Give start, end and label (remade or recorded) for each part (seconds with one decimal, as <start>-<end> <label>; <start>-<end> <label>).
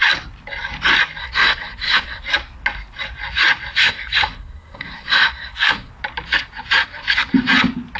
0.0-1.2 recorded; 1.2-2.2 remade; 2.2-3.8 recorded; 3.8-5.9 remade; 5.9-8.0 recorded